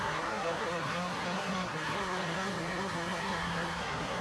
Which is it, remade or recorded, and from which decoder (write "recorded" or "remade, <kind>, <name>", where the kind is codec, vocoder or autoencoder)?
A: remade, codec, SNAC